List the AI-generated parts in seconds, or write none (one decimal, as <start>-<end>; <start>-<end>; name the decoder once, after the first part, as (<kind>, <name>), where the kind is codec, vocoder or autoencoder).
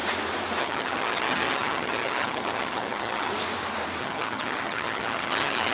0.6-3.3 (vocoder, HiFi-GAN); 4.0-5.7